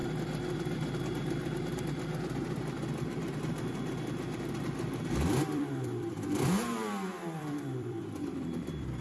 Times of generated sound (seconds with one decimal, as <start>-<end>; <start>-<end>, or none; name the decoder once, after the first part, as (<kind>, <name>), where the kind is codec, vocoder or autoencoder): 1.9-9.0 (vocoder, BigVGAN v2)